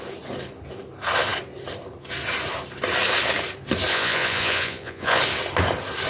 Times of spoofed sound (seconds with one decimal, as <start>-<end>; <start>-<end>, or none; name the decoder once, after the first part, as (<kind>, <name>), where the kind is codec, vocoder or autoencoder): 3.9-5.2 (vocoder, Vocos)